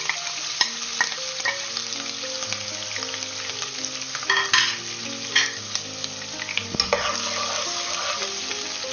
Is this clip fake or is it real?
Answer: real